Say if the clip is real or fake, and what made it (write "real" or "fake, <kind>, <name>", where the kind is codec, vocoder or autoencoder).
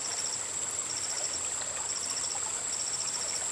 real